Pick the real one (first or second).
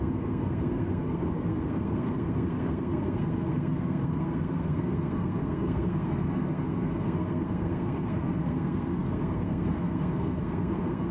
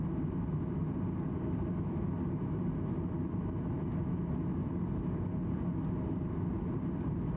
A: second